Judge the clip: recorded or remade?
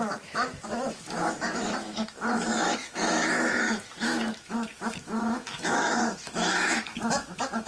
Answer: remade